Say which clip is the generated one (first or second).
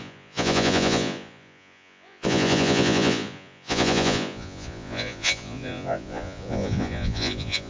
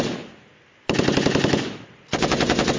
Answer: first